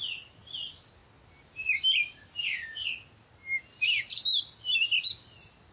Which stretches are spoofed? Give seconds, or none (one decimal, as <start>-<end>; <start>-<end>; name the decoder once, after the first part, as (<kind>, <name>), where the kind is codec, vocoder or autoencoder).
none